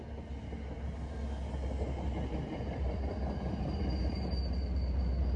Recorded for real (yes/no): yes